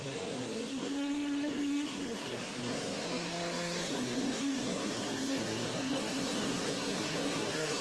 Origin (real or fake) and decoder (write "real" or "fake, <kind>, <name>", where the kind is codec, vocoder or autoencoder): fake, codec, SNAC